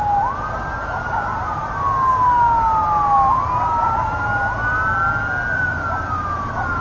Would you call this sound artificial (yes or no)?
no